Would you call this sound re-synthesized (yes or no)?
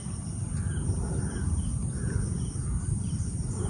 no